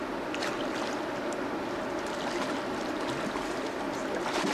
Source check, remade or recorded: recorded